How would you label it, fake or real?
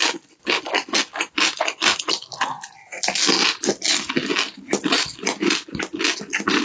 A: real